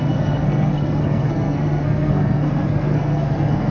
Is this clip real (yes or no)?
no